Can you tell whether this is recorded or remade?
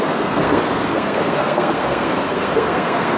remade